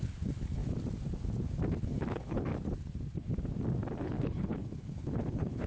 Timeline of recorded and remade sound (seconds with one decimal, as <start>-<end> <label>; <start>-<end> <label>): 0.0-0.6 remade; 0.6-1.7 recorded; 1.7-2.5 remade; 2.5-4.0 recorded; 4.0-5.7 remade